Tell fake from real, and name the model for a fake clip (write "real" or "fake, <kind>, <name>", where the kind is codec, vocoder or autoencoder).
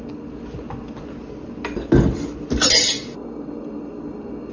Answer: real